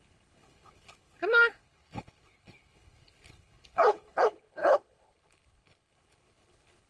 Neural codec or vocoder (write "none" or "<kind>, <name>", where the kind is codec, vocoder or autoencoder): codec, HILCodec